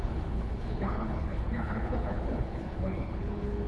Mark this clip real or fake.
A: fake